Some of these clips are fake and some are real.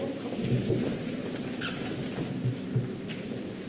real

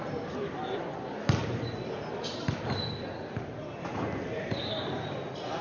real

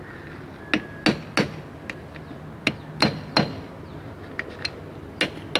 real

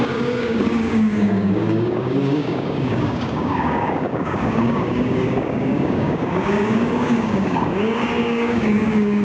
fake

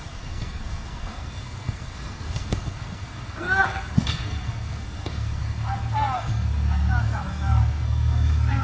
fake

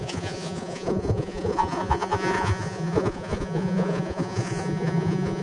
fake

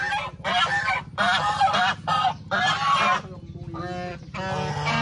real